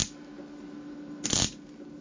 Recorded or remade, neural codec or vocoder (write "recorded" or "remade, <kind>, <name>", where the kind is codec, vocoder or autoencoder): recorded